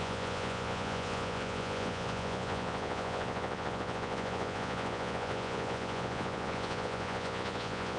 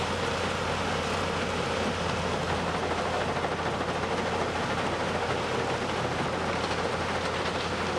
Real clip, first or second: second